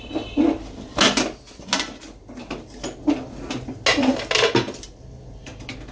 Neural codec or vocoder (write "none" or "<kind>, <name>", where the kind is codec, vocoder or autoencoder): none